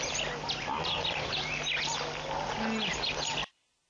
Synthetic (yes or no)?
no